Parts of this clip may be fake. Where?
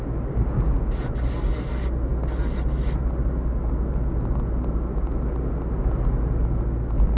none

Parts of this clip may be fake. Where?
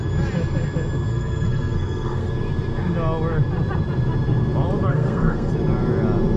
1.1-2.3 (codec, SNAC); 4.9-5.5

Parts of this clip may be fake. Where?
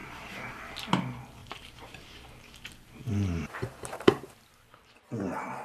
0.0-0.6 (vocoder, BigVGAN v2); 1.4-2.5; 3.0-4.4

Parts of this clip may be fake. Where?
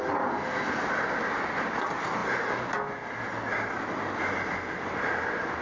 none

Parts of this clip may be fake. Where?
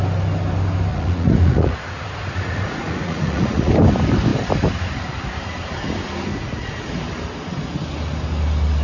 0.9-3.7 (vocoder, Vocos); 6.3-6.9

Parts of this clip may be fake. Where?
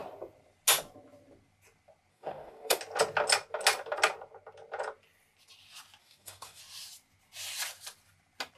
2.1-2.8 (codec, DAC); 6.0-6.6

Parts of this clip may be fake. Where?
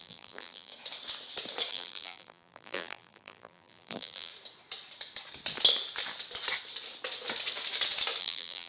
0.0-0.7 (vocoder, BigVGAN v2); 1.7-4.3; 8.2-8.7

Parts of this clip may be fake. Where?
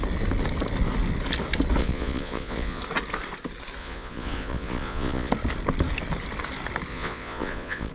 1.8-2.8 (vocoder, Vocos); 3.8-5.3; 6.9-7.9